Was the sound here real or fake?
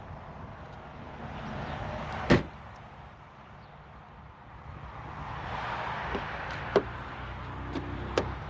real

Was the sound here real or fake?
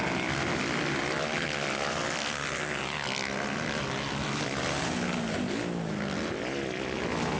real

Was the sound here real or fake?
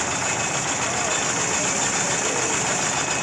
real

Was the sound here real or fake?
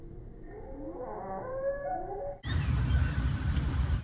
real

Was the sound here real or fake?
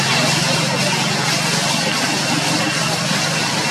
real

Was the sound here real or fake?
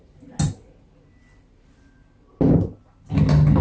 real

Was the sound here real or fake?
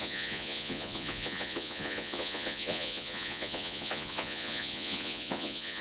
fake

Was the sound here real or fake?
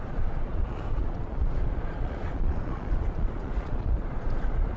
fake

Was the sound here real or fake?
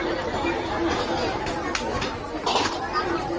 real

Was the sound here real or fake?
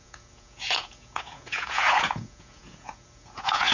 fake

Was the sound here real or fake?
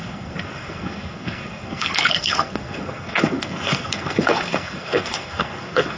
fake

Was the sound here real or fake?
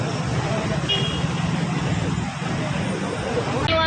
real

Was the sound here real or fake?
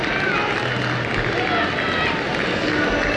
real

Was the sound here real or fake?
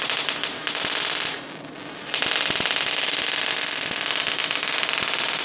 real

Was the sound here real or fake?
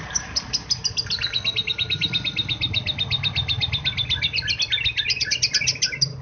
real